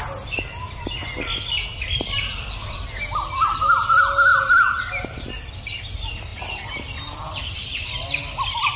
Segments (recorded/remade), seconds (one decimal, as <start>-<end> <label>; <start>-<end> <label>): 0.0-8.8 recorded